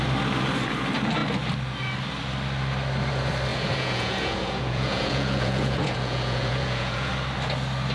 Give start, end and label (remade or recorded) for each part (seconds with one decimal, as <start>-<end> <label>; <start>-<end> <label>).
0.0-3.5 recorded; 3.5-7.1 remade; 7.1-7.9 recorded